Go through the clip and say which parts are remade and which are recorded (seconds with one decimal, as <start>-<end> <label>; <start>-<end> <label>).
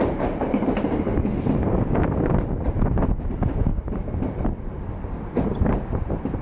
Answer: 0.0-1.1 remade; 1.1-2.6 recorded; 2.6-3.7 remade; 3.7-5.1 recorded; 5.1-6.4 remade